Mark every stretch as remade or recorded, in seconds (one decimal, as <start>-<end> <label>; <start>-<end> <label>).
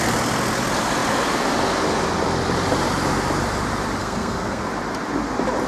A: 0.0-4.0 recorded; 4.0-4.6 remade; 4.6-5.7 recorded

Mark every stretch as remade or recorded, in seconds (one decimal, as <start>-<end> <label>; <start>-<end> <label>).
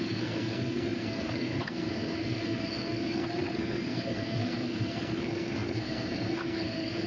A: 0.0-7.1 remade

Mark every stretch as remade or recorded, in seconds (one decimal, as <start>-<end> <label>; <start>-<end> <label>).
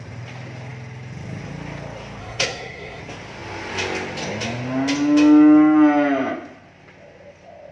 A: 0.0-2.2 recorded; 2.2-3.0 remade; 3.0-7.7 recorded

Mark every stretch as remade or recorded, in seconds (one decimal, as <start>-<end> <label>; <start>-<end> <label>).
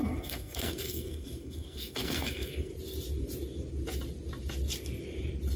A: 0.0-2.7 remade; 2.7-5.6 recorded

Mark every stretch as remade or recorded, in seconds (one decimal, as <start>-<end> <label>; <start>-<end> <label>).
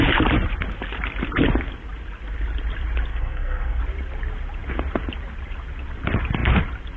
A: 0.0-3.1 recorded; 3.1-3.8 remade; 3.8-7.0 recorded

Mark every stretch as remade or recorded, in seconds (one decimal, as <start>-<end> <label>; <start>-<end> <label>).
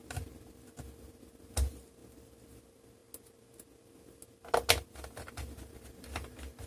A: 0.0-6.7 recorded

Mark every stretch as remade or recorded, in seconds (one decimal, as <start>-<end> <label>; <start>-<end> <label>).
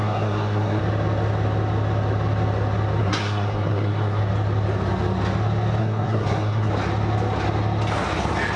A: 0.0-0.8 remade; 0.8-3.0 recorded; 3.0-4.2 remade; 4.2-5.8 recorded; 5.8-6.7 remade; 6.7-8.6 recorded